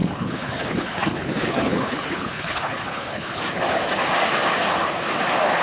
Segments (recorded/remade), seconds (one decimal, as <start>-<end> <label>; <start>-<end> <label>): 0.0-3.4 remade; 3.4-5.6 recorded